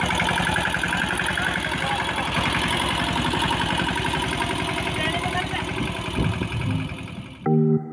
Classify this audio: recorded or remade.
recorded